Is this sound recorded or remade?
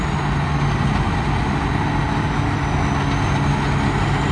recorded